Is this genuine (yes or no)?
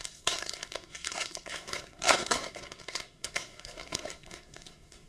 no